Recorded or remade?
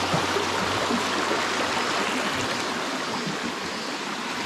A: recorded